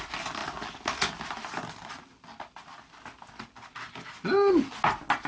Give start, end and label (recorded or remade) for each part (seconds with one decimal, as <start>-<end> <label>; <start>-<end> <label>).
0.0-5.3 recorded